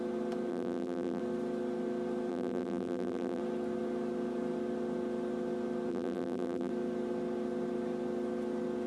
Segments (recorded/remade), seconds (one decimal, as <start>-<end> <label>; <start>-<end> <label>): 0.0-0.5 recorded; 0.5-1.2 remade; 1.2-2.3 recorded; 2.3-3.4 remade; 3.4-5.9 recorded; 5.9-6.7 remade; 6.7-8.9 recorded